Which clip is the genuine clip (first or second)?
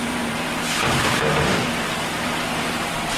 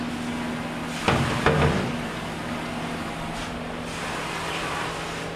second